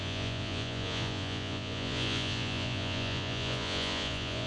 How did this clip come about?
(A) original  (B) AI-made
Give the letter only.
B